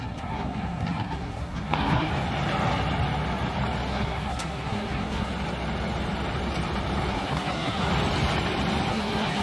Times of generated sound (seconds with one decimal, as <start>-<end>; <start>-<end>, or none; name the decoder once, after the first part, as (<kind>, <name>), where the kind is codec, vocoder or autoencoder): 0.0-2.1 (codec, SNAC); 3.9-5.3; 7.1-7.9; 8.9-9.4